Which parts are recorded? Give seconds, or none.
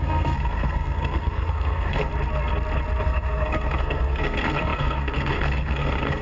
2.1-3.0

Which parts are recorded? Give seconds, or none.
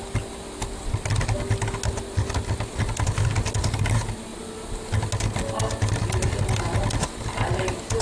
0.0-8.0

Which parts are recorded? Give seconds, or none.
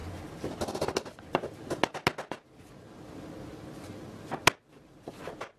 0.0-5.6